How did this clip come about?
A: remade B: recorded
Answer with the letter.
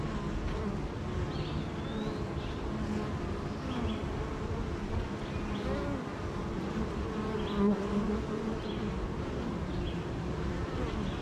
B